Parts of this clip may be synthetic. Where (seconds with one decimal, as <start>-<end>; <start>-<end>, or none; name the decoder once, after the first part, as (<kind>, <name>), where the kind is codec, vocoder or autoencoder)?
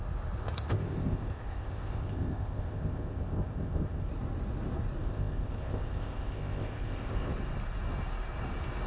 0.4-4.1 (codec, ZipCodec); 5.0-7.3